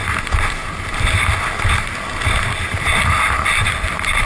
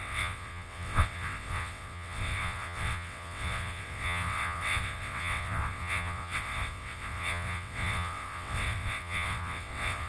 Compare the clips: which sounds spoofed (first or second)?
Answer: second